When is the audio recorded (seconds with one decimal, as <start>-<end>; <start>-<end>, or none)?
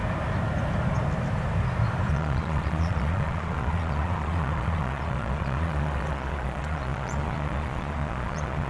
0.0-2.1